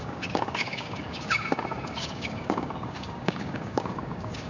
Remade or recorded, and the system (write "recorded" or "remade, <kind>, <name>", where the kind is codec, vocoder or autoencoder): remade, codec, DAC